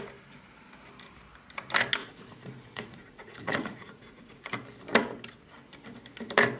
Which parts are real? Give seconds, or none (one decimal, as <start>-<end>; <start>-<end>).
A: 0.0-2.0; 4.5-6.6

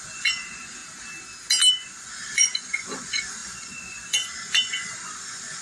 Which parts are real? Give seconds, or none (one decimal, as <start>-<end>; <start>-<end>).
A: 0.8-1.7

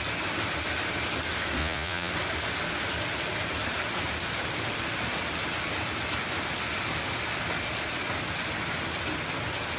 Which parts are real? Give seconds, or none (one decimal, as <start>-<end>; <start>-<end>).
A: 0.0-1.6; 2.1-9.8

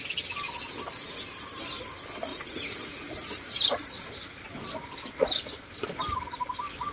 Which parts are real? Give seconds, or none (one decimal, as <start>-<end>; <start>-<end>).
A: 0.0-2.3; 3.5-6.9

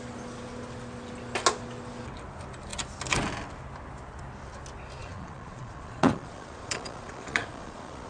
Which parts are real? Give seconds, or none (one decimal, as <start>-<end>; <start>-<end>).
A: 0.0-5.0